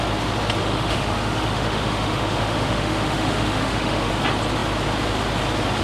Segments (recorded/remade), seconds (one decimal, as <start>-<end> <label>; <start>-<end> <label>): 0.0-0.6 recorded; 0.6-4.1 remade; 4.1-5.8 recorded